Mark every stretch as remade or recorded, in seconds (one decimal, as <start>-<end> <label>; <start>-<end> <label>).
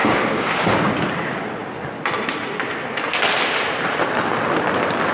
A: 0.0-0.9 remade; 0.9-5.1 recorded